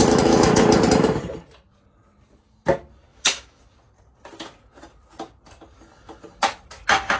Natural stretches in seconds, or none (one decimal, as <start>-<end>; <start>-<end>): 0.6-3.1; 3.6-7.2